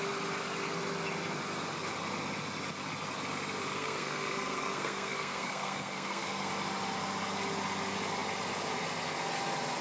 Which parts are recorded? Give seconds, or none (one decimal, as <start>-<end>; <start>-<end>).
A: 0.0-3.7; 6.5-9.8

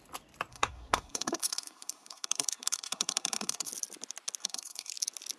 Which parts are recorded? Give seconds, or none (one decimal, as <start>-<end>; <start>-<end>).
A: 0.0-0.5; 3.7-4.4; 4.9-5.4